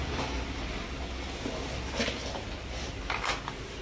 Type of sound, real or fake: real